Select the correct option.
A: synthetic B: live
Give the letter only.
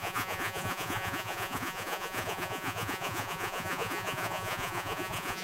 A